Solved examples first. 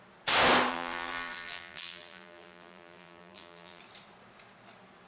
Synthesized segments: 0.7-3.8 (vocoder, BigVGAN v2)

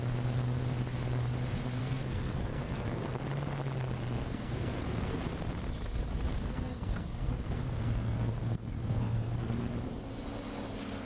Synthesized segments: 1.8-3.2 (codec, SNAC); 4.1-5.2; 6.3-9.7

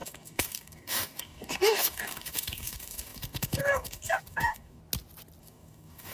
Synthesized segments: 0.0-4.8 (codec, DAC); 5.4-6.1

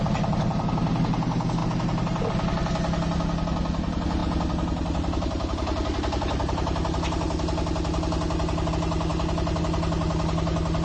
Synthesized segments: none

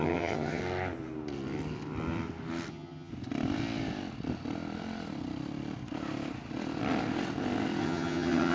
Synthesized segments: 0.0-0.6 (vocoder, HiFi-GAN); 2.7-3.1; 7.8-8.5